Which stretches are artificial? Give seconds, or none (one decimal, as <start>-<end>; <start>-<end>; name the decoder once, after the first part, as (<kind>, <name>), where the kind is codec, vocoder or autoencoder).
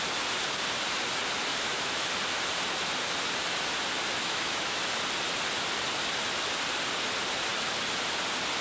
1.5-2.1 (autoencoder, DAC-VAE); 4.2-4.8